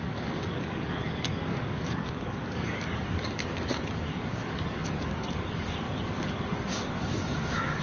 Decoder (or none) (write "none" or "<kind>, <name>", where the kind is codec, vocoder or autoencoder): codec, DAC